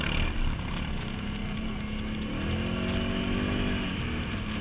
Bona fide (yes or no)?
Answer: yes